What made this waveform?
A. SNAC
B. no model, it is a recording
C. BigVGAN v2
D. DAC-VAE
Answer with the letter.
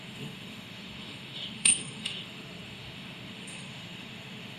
D